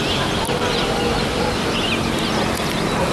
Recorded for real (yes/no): yes